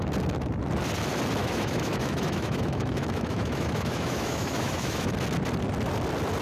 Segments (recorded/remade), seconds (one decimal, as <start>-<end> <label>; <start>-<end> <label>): 0.0-1.4 recorded; 1.4-5.1 remade; 5.1-6.4 recorded